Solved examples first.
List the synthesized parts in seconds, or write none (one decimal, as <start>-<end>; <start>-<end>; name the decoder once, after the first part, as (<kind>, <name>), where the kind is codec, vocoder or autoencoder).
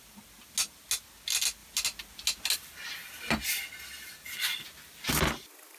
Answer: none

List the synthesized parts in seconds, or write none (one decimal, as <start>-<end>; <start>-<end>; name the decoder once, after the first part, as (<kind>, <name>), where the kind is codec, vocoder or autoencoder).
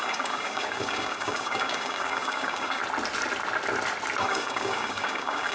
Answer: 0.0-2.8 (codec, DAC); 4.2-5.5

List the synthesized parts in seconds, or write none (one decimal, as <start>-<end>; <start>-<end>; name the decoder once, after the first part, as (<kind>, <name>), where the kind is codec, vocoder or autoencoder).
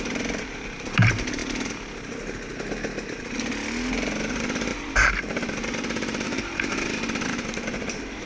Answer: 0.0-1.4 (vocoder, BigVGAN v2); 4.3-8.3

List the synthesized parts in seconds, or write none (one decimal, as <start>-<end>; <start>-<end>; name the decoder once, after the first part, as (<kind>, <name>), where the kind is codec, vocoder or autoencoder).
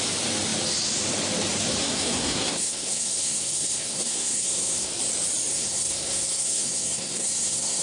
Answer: 1.8-4.9 (codec, SNAC); 5.5-7.8